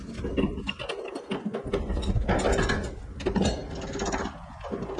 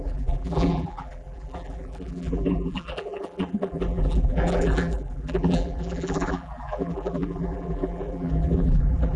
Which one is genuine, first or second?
first